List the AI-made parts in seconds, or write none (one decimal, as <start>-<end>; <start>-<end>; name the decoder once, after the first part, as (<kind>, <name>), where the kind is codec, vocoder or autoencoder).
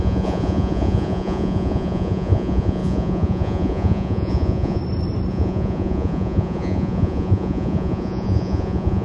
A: 0.0-4.8 (vocoder, Vocos); 5.3-9.0